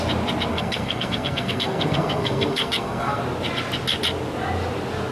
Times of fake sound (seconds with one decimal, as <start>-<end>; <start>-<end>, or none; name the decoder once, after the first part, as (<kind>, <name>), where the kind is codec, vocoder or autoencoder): 0.5-3.2 (codec, SNAC)